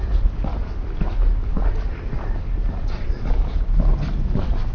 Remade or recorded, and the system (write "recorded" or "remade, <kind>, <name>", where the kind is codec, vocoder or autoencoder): recorded